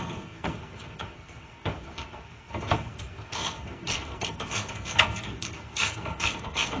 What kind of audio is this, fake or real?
fake